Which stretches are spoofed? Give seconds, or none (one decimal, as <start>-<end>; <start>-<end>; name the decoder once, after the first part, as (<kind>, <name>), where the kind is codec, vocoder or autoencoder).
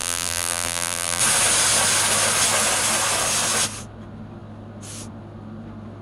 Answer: 0.0-1.2 (vocoder, BigVGAN v2)